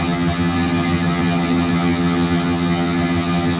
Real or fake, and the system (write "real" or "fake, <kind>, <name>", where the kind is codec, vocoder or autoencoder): fake, vocoder, HiFi-GAN